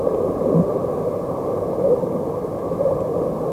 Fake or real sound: real